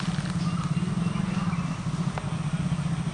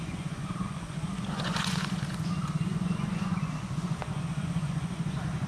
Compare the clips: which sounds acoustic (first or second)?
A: first